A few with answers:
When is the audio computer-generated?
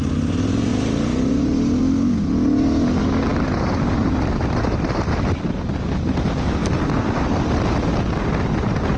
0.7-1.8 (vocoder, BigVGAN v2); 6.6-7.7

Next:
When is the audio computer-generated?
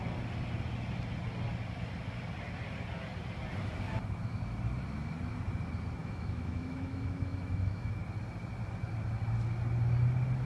6.0-8.0 (autoencoder, DAC-VAE)